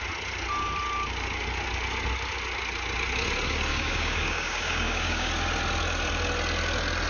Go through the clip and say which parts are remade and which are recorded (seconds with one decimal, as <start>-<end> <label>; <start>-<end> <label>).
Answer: 0.0-3.7 recorded; 3.7-5.3 remade; 5.3-7.1 recorded